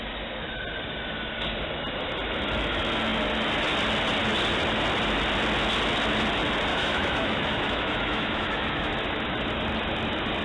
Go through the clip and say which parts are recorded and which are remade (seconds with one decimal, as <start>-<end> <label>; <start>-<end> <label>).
0.0-6.7 recorded; 6.7-8.9 remade; 8.9-10.4 recorded